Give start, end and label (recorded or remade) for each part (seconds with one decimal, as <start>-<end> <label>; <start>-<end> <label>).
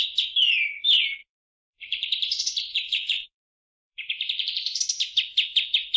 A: 0.0-1.2 recorded; 1.2-4.8 remade; 4.8-6.0 recorded